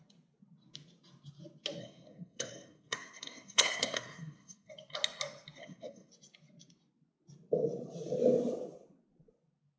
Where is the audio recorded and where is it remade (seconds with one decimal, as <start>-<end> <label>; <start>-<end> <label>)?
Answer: 0.0-1.8 recorded; 1.8-4.7 remade; 4.7-5.6 recorded; 5.6-6.1 remade; 6.1-9.8 recorded